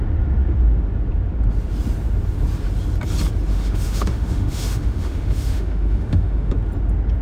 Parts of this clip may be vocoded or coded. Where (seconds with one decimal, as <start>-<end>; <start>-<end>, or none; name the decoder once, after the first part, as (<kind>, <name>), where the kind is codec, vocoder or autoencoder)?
3.5-6.5 (autoencoder, DAC-VAE)